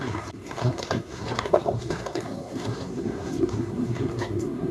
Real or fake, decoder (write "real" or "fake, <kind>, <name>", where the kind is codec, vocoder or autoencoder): fake, codec, SNAC